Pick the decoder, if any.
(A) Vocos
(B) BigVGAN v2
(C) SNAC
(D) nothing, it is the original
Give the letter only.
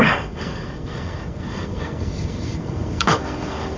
C